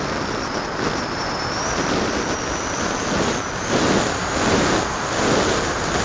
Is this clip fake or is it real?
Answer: real